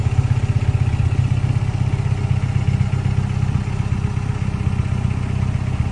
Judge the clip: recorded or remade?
recorded